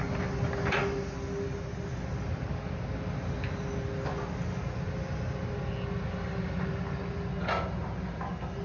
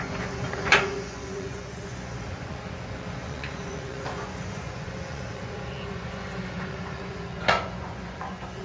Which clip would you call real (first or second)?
first